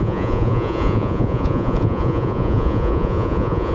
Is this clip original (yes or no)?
no